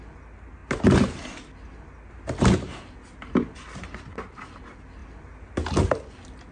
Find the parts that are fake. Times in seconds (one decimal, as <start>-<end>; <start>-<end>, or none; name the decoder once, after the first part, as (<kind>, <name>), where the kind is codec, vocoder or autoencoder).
none